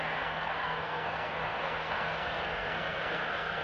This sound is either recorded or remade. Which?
remade